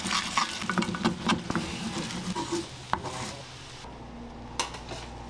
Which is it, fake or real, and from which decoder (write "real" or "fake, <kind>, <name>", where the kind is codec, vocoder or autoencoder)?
real